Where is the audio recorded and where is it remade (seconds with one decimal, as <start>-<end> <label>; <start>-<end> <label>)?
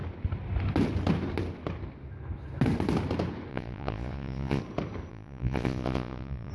0.0-3.5 recorded; 3.5-4.6 remade; 4.6-5.1 recorded; 5.1-6.5 remade